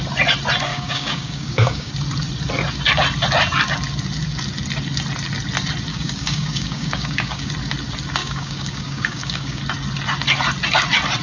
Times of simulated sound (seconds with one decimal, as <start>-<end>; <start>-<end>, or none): 0.7-1.9; 5.9-7.5; 8.2-9.6